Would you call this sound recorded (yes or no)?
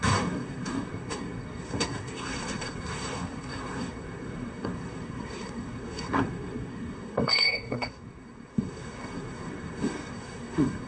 no